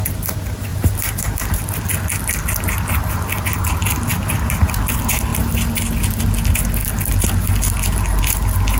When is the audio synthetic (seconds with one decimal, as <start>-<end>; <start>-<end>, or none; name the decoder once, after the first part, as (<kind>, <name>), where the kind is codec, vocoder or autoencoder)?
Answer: 0.7-1.7 (vocoder, BigVGAN v2); 4.1-4.7